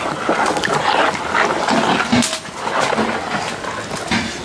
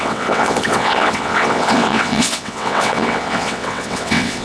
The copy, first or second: second